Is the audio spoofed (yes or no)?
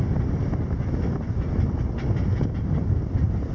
no